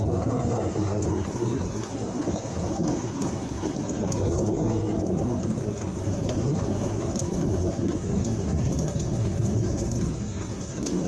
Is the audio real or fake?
fake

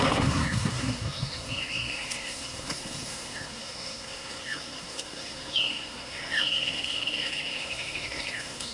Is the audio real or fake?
fake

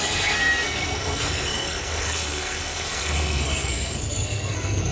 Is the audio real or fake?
fake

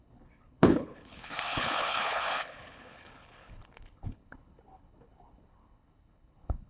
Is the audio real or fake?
fake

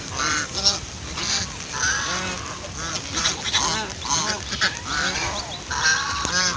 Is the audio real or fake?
real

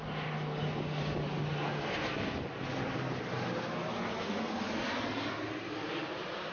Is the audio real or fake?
real